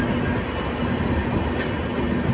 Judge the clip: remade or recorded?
recorded